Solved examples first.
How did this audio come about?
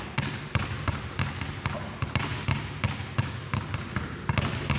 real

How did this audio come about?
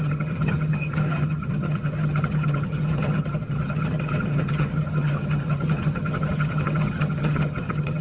fake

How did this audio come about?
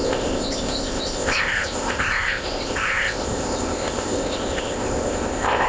fake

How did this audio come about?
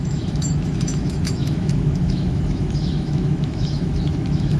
fake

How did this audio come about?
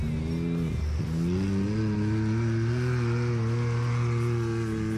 real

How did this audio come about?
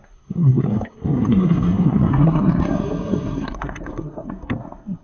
fake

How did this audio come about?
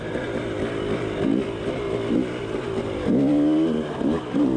real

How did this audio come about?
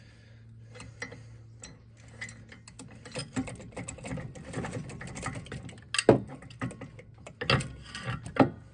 real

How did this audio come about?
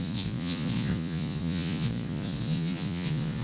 fake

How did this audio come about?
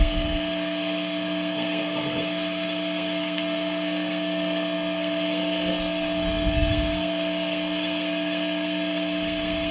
fake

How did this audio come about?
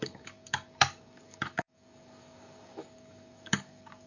fake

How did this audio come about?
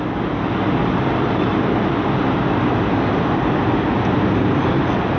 real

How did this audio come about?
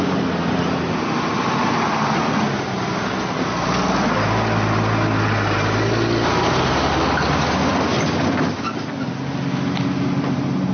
real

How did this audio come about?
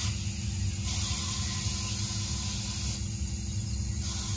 real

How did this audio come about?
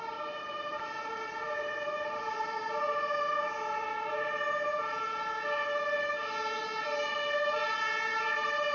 real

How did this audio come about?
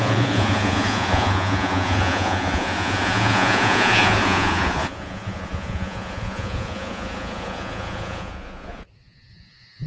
fake